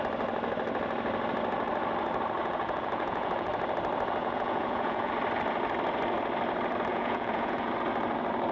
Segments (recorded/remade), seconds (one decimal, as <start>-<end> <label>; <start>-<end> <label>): 0.0-2.4 recorded; 2.4-3.5 remade; 3.5-4.2 recorded; 4.2-5.1 remade; 5.1-6.9 recorded; 6.9-7.7 remade; 7.7-8.5 recorded